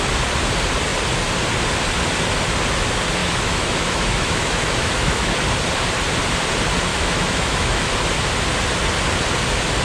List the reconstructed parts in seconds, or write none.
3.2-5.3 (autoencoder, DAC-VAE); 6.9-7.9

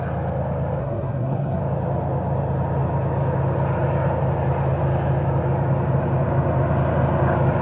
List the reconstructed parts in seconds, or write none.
0.8-1.6 (codec, SNAC)

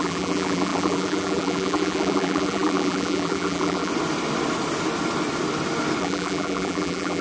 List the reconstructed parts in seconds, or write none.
0.0-3.9 (vocoder, BigVGAN v2); 6.0-7.2

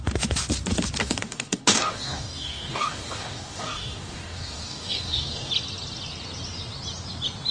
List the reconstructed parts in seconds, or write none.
1.0-5.5 (codec, DAC)